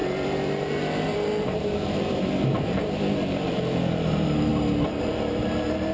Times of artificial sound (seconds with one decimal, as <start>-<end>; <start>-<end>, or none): 0.0-4.5; 5.0-5.9